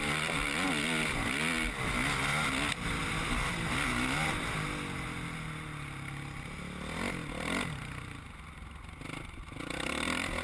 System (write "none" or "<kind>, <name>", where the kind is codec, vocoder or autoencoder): none